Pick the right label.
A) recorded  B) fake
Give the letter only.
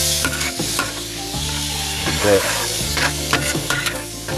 B